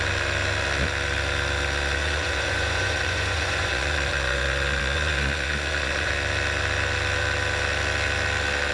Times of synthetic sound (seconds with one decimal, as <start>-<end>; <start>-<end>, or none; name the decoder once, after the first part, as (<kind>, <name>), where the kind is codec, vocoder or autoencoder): 2.0-6.1 (vocoder, Vocos)

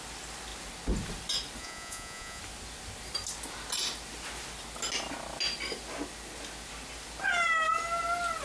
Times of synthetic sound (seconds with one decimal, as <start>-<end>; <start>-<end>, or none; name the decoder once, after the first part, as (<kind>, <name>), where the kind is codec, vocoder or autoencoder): 1.6-2.4 (vocoder, Vocos)